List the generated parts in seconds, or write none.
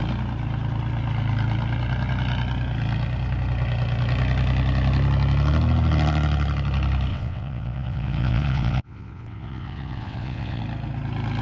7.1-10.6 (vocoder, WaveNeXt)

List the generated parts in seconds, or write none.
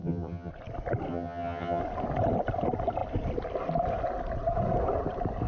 0.0-0.5 (vocoder, HiFi-GAN); 1.1-1.8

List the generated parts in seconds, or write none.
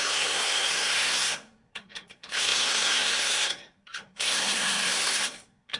0.0-5.8 (codec, SNAC)